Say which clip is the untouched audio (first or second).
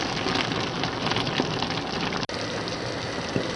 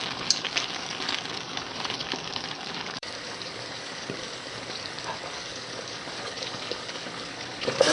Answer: first